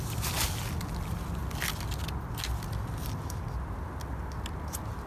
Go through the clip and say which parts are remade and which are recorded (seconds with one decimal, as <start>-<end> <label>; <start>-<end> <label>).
0.0-5.1 recorded